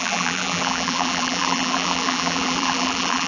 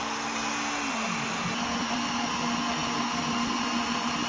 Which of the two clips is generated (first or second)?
first